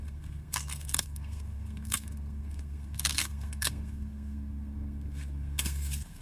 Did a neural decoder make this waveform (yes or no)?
yes